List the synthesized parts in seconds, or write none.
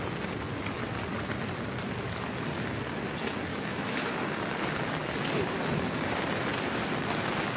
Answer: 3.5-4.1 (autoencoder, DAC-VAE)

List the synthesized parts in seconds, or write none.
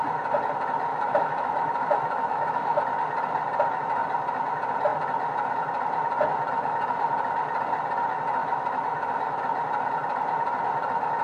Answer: 0.9-2.8 (autoencoder, DAC-VAE); 8.4-9.4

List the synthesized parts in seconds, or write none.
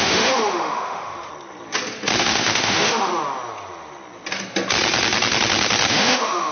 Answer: 0.0-1.3 (autoencoder, DAC-VAE); 2.2-3.1; 5.9-6.5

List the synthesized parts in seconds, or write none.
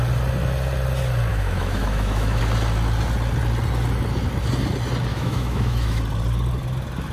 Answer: 1.3-2.4 (autoencoder, DAC-VAE); 5.1-6.0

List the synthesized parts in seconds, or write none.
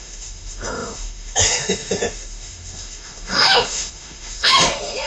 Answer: 0.0-5.1 (autoencoder, DAC-VAE)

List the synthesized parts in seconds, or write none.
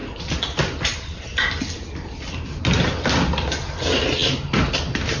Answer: none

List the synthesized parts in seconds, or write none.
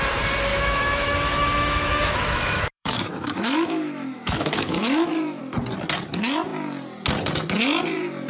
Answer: 0.5-5.4 (autoencoder, DAC-VAE)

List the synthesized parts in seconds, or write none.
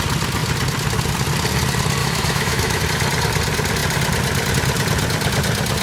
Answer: 2.0-2.8 (autoencoder, DAC-VAE)